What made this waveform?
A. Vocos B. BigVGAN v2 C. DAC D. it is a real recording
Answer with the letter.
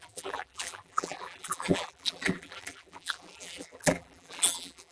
B